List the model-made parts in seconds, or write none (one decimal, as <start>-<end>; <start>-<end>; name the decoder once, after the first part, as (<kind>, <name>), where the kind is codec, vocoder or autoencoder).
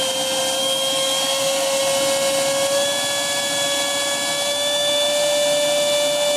0.6-1.8 (codec, DAC)